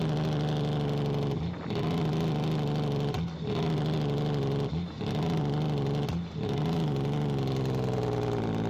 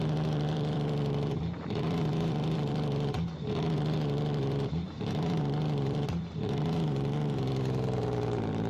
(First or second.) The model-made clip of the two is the second